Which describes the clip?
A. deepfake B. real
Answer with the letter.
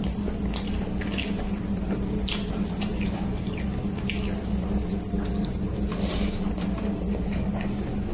B